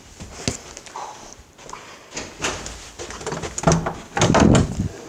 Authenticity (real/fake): real